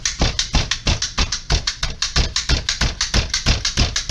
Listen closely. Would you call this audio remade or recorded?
recorded